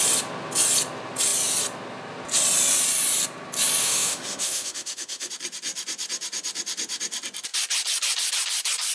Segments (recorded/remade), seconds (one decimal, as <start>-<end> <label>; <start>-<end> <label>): 0.0-3.8 recorded; 3.8-5.3 remade; 5.3-8.9 recorded